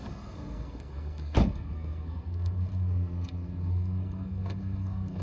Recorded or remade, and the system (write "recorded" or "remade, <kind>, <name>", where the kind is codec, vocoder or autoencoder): remade, codec, SNAC